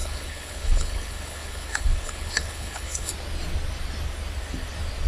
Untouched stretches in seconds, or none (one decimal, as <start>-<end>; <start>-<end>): 3.1-5.1